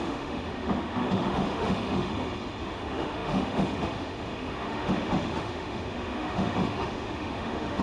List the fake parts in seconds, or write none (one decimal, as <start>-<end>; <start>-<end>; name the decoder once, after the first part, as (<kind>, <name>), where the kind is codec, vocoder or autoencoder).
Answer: 0.0-2.1 (autoencoder, DAC-VAE); 2.6-7.8